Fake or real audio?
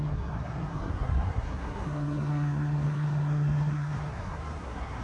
fake